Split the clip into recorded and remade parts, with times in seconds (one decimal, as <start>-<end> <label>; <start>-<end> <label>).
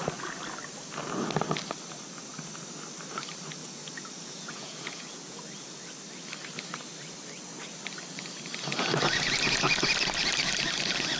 0.0-3.6 recorded; 3.6-5.4 remade; 5.4-11.2 recorded